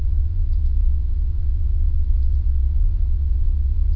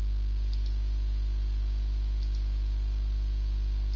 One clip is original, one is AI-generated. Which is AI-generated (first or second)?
first